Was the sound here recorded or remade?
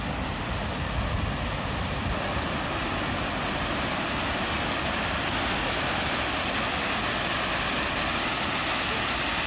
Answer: recorded